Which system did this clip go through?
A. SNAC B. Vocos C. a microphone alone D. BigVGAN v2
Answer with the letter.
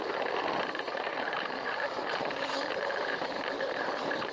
D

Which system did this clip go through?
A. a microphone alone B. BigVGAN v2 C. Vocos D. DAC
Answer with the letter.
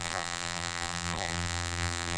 B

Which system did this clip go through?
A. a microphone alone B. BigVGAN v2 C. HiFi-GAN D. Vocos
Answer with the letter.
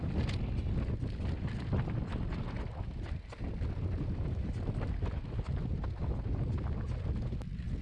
A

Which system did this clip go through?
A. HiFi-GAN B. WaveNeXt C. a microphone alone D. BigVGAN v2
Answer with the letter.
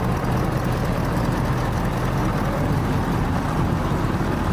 C